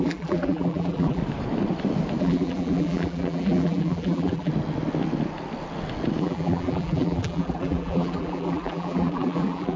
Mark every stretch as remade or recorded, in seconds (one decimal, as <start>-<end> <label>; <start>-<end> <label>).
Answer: 0.0-1.2 remade; 1.2-2.2 recorded; 2.2-4.5 remade; 4.5-6.2 recorded; 6.2-9.8 remade